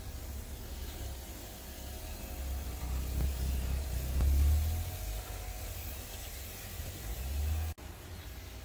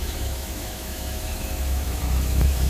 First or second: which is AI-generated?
second